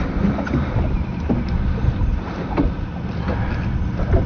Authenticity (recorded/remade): recorded